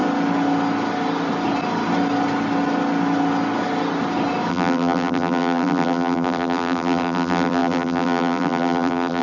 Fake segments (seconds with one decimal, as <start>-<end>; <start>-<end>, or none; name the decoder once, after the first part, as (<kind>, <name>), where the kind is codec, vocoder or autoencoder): 4.5-9.2 (vocoder, BigVGAN v2)